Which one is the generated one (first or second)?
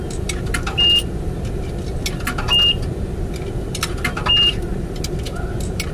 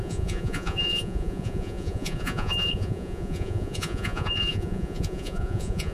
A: second